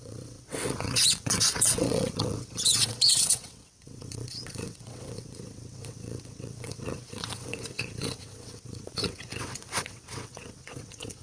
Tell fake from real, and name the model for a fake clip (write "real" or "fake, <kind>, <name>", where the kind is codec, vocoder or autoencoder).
fake, vocoder, WaveNeXt